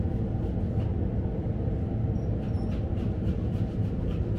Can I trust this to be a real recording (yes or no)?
yes